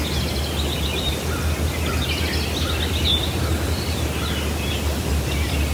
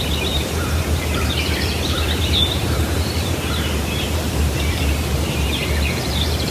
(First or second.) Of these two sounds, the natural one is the first